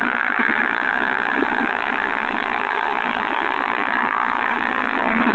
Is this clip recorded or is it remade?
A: remade